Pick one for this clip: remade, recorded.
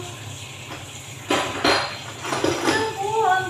recorded